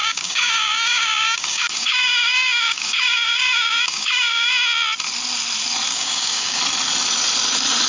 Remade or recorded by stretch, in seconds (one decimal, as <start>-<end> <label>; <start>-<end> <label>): 0.0-4.5 remade; 4.5-5.9 recorded; 5.9-6.6 remade; 6.6-7.9 recorded